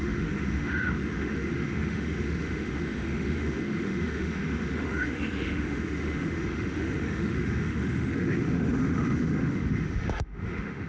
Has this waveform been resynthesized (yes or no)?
yes